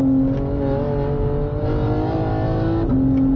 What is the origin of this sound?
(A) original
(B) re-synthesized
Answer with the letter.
A